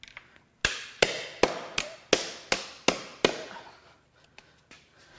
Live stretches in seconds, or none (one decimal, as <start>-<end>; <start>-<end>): 0.0-5.2